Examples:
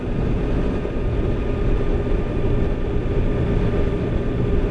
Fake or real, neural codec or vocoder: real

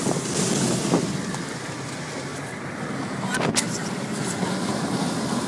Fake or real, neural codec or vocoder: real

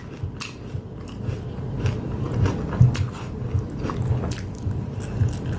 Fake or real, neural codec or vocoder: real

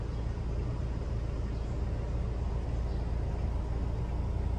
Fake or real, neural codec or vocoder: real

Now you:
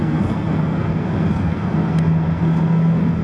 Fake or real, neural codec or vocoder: fake, codec, SNAC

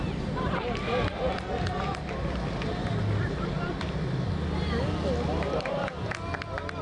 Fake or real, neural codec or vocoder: fake, vocoder, BigVGAN v2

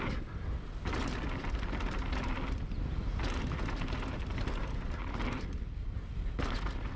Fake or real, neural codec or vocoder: real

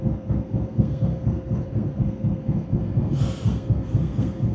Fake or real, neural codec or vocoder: fake, codec, SNAC